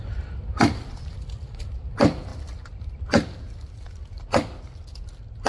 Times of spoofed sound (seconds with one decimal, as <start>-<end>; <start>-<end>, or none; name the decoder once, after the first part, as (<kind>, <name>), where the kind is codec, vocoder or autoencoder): none